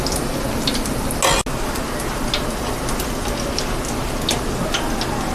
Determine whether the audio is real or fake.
real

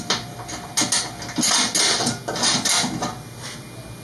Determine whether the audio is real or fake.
real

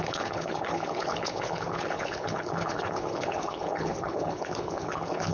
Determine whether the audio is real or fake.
fake